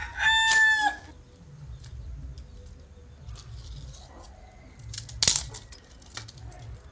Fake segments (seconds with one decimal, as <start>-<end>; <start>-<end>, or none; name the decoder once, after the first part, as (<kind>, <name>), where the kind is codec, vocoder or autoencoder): none